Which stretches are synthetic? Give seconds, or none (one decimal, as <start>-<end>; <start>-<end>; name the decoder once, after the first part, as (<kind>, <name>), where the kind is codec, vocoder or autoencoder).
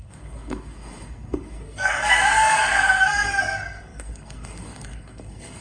0.0-5.6 (codec, SNAC)